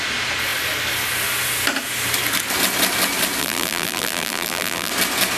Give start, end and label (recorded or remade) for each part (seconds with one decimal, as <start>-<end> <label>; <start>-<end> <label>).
0.0-3.4 recorded; 3.4-4.9 remade; 4.9-5.4 recorded